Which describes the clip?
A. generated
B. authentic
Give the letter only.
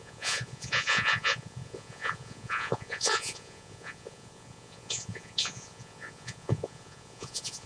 A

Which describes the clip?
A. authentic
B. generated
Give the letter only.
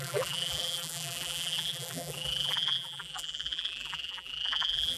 B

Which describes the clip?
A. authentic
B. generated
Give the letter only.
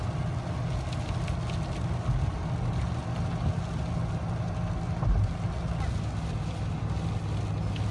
A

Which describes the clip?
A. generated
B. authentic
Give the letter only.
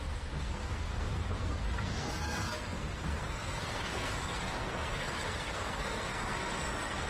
A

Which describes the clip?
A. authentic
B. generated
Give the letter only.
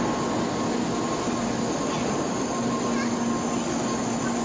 A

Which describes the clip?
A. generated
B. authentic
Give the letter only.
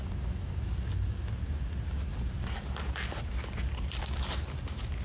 B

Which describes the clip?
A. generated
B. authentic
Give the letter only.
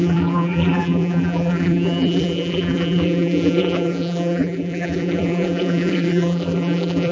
A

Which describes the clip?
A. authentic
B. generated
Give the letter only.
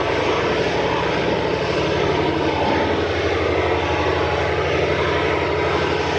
A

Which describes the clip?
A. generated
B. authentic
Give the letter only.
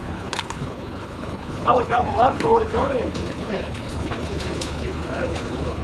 A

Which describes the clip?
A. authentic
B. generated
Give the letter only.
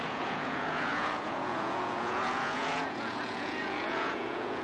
B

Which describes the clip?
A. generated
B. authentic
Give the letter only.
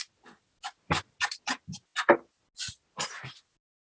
B